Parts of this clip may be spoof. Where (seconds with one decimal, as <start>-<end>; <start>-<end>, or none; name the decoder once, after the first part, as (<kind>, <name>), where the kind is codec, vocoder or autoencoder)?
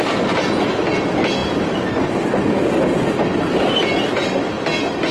none